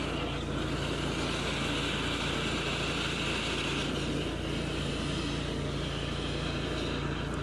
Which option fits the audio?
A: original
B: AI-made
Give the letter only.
A